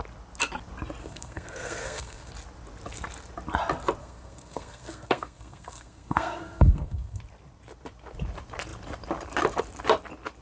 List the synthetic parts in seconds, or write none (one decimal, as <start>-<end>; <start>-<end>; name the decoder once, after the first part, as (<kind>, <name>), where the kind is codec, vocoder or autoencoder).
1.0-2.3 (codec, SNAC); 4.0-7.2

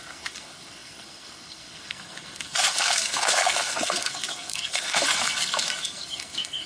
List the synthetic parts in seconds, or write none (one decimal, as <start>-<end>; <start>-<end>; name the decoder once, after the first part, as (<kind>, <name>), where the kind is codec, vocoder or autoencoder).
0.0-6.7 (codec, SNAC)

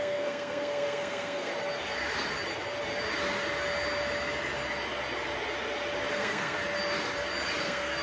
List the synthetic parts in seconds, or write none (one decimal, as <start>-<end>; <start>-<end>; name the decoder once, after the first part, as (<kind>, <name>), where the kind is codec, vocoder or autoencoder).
0.0-1.5 (codec, SNAC); 6.1-6.6; 7.6-8.0